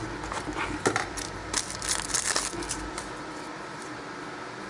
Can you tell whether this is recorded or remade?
recorded